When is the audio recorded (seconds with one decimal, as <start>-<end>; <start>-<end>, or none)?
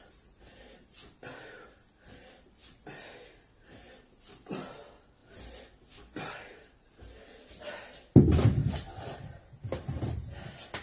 0.0-10.8